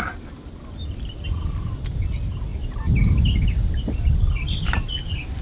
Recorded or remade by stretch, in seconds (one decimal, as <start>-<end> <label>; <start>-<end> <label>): 0.0-5.4 recorded